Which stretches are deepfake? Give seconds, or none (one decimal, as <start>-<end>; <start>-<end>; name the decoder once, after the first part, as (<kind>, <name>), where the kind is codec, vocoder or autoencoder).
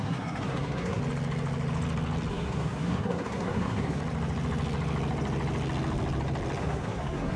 0.0-1.0 (codec, SNAC); 2.3-4.0; 6.6-7.4